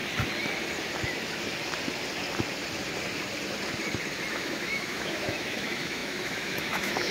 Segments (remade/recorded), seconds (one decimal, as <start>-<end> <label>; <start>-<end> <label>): 0.0-4.3 recorded; 4.3-7.1 remade